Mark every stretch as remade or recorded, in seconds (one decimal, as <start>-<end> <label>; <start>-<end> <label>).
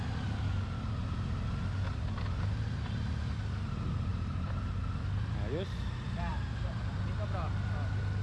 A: 0.0-4.1 recorded; 4.1-4.7 remade; 4.7-6.3 recorded; 6.3-7.0 remade; 7.0-8.2 recorded